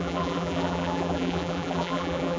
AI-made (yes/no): yes